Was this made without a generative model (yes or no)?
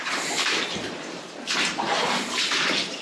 yes